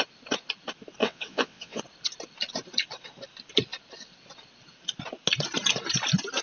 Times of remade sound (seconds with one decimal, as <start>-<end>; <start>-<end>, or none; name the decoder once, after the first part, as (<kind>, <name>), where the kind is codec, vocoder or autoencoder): 1.0-1.8 (vocoder, WaveNeXt)